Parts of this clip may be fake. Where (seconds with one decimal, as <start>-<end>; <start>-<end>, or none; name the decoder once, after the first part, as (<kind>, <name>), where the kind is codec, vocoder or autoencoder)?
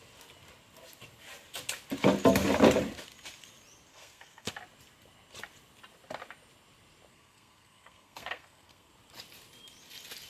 3.9-4.5 (codec, SNAC); 7.1-8.9